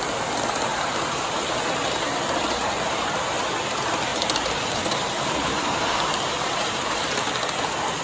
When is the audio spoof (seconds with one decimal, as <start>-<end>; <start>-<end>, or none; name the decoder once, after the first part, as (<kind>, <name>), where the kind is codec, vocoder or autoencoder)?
0.7-1.4 (vocoder, BigVGAN v2); 4.1-7.0